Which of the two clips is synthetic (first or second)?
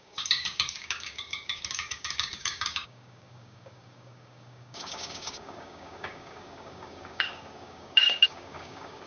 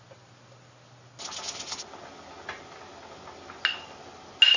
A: first